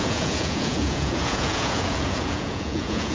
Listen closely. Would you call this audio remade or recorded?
remade